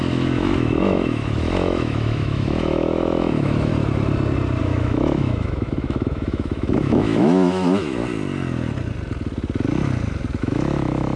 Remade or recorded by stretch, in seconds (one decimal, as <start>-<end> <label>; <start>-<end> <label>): 0.0-3.7 remade; 3.7-4.6 recorded; 4.6-8.0 remade; 8.0-10.4 recorded; 10.4-11.2 remade